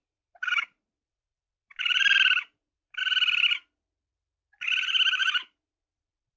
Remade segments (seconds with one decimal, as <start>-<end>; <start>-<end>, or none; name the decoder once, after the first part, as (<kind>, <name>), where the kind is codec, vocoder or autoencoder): 0.0-3.0 (vocoder, BigVGAN v2); 5.2-6.4